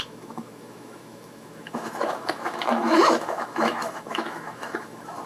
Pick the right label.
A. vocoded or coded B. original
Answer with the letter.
A